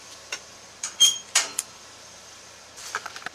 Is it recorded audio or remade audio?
remade